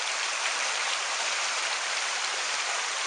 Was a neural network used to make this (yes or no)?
yes